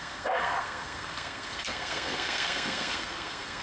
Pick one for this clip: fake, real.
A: fake